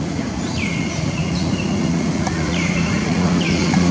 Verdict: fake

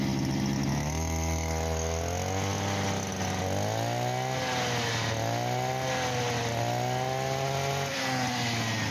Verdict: real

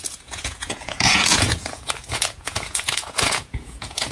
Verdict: fake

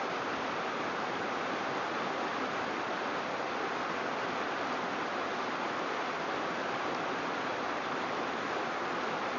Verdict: real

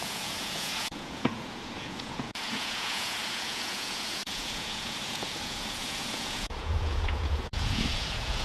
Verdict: fake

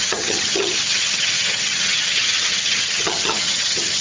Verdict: fake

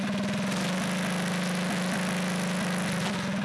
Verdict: real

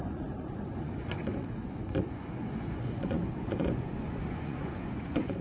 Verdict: fake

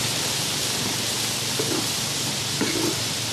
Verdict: real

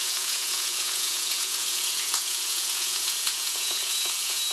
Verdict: fake